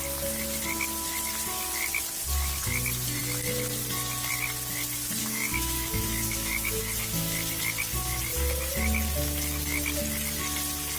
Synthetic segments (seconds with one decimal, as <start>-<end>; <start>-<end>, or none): 5.2-6.8